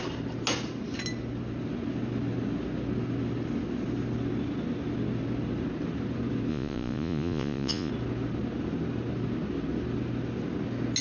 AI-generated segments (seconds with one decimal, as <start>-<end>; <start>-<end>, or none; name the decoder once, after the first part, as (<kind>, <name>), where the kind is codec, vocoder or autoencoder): 6.5-7.9 (vocoder, Vocos)